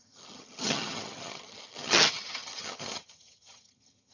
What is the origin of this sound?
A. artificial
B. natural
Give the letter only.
A